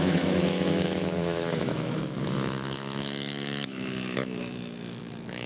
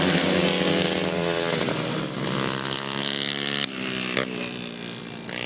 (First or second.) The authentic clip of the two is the second